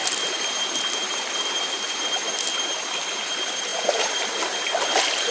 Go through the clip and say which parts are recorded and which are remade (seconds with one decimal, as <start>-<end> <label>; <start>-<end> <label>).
0.0-5.3 recorded